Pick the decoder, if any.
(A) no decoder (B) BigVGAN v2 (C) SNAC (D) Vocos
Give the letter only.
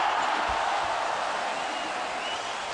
A